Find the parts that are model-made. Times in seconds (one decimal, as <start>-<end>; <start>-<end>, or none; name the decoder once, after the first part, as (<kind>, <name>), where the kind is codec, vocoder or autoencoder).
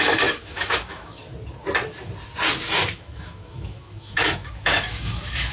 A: 0.0-1.2 (autoencoder, DAC-VAE); 2.9-5.5